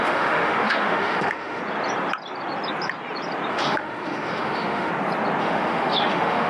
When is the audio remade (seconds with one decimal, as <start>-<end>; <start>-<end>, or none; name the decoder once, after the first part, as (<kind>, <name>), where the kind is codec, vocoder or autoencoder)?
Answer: 0.0-1.6 (autoencoder, DAC-VAE); 3.5-4.9; 5.4-6.5